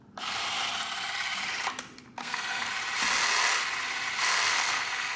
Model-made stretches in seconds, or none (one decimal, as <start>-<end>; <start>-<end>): 2.2-2.7; 4.5-5.2